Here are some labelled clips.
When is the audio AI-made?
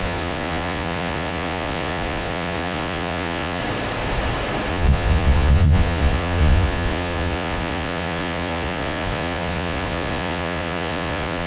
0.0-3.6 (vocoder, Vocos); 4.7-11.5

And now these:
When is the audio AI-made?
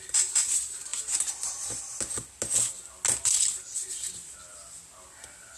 none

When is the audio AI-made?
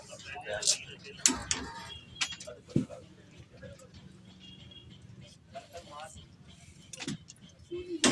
none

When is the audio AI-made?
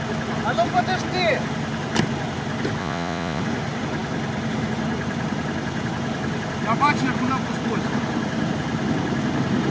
2.8-3.4 (vocoder, Vocos)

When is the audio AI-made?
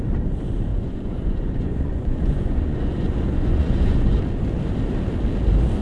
0.7-4.2 (vocoder, Vocos)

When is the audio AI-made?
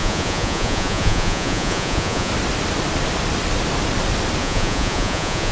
0.0-2.3 (vocoder, Vocos); 4.4-5.5